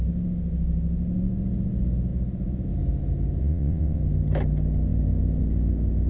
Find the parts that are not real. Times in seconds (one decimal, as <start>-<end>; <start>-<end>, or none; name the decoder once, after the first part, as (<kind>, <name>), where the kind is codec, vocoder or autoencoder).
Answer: 3.4-4.0 (vocoder, WaveNeXt)